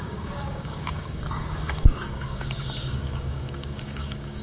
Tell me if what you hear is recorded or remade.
remade